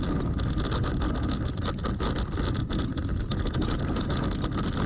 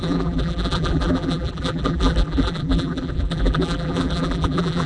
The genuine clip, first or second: first